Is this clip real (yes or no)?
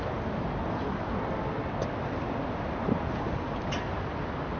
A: yes